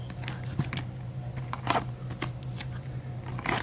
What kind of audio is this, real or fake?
real